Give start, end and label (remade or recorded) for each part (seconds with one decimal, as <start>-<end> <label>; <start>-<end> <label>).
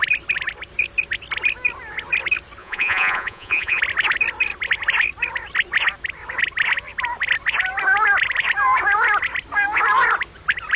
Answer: 0.0-2.6 recorded; 2.6-3.8 remade; 3.8-10.8 recorded